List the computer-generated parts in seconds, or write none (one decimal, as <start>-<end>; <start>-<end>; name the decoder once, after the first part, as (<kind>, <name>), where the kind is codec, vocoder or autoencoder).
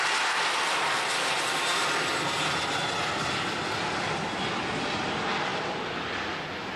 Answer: none